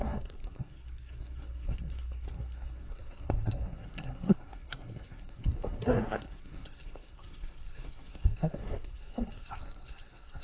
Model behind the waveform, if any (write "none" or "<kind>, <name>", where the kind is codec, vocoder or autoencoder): codec, SNAC